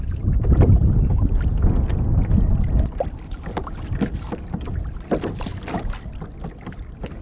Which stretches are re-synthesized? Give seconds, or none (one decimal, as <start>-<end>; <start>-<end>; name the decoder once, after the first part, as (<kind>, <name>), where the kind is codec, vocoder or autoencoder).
none